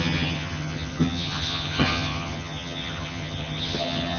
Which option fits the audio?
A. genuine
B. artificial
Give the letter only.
B